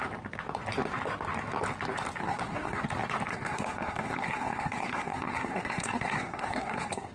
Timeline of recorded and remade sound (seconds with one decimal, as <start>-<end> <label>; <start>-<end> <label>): 0.0-2.2 recorded; 2.2-2.8 remade; 2.8-3.3 recorded; 3.3-7.1 remade